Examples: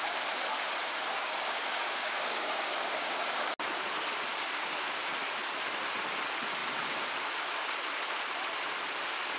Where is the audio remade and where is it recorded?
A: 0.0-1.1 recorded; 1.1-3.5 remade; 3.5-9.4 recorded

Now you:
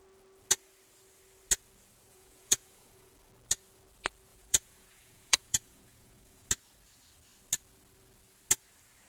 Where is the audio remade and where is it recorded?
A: 0.0-2.1 recorded; 2.1-3.1 remade; 3.1-4.3 recorded; 4.3-6.5 remade; 6.5-9.1 recorded

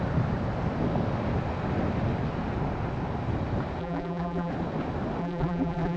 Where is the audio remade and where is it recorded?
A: 0.0-3.8 recorded; 3.8-4.5 remade; 4.5-5.2 recorded; 5.2-6.0 remade

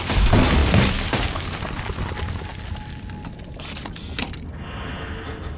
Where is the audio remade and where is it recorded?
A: 0.0-5.6 recorded

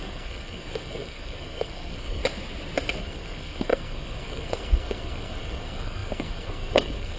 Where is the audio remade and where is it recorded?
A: 0.0-2.2 remade; 2.2-3.0 recorded; 3.0-7.2 remade